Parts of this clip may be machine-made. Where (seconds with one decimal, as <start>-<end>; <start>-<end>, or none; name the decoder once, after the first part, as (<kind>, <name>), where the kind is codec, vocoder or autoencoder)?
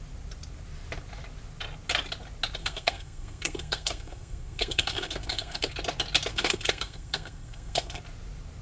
2.6-5.7 (codec, SNAC); 6.3-8.0